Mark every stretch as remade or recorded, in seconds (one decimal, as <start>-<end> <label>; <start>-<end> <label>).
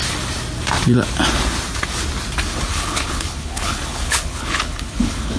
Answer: 0.0-2.7 recorded; 2.7-5.4 remade